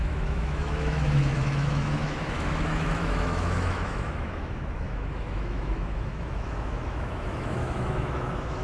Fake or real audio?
fake